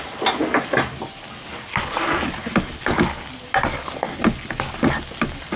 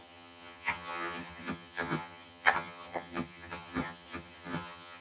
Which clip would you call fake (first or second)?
second